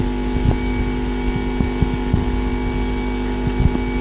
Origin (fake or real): real